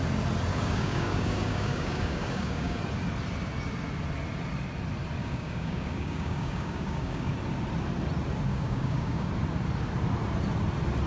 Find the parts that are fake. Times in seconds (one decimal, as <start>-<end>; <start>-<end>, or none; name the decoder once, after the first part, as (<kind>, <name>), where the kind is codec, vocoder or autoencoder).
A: 0.5-2.8 (codec, DAC); 5.2-7.3; 8.5-9.3

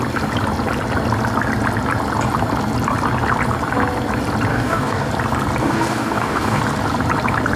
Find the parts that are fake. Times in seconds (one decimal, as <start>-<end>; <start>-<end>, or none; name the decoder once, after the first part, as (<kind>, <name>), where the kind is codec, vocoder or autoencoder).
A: 4.5-5.1 (codec, DAC); 5.6-6.6

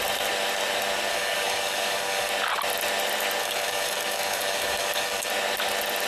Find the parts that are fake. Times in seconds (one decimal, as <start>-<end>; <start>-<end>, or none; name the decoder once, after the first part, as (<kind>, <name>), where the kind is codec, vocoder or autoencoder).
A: 1.1-2.3 (codec, DAC); 3.4-5.3

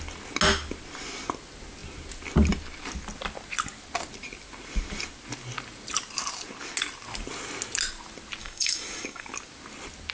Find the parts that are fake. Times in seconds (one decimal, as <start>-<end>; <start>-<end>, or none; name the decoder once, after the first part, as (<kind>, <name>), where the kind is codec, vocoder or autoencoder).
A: 8.4-9.3 (codec, DAC)

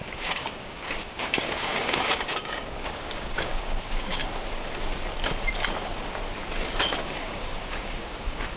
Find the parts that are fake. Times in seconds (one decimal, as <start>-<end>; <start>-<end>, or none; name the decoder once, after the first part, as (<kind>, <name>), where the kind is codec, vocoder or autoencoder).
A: 0.0-4.2 (codec, DAC); 7.0-8.6

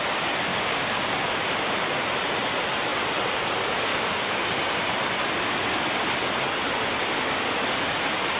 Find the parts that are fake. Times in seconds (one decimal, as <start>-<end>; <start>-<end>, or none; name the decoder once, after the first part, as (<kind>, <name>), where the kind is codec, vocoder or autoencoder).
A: 0.5-1.3 (codec, DAC); 3.9-4.4